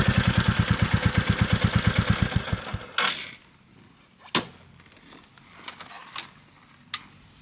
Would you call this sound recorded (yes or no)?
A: yes